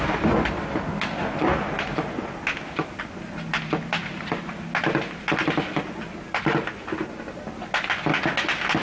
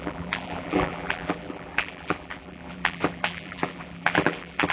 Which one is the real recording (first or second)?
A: first